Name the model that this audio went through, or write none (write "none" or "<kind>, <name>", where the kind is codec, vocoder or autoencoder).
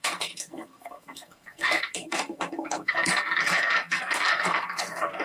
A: codec, SNAC